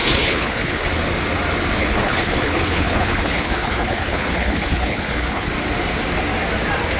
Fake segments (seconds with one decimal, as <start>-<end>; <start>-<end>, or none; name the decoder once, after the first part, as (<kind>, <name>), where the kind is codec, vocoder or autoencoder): 0.0-0.9 (codec, HILCodec); 1.8-5.5